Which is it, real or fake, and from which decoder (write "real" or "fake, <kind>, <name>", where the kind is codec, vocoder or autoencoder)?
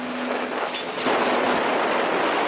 real